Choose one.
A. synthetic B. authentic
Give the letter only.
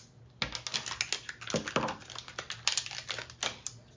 B